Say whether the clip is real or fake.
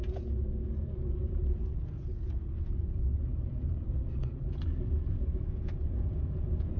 fake